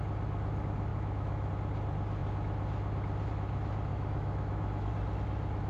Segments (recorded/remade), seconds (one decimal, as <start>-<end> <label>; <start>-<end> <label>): 0.0-0.9 recorded; 0.9-1.5 remade; 1.5-3.9 recorded; 3.9-4.9 remade; 4.9-5.7 recorded